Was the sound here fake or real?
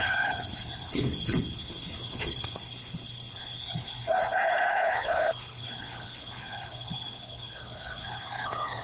fake